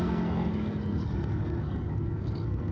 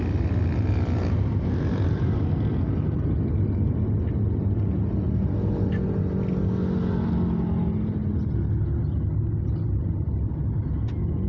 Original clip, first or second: second